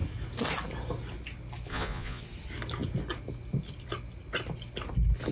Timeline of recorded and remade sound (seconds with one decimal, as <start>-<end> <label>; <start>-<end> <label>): 0.0-1.7 recorded; 1.7-2.2 remade; 2.2-5.3 recorded